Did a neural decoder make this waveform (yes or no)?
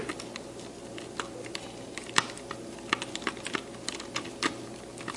no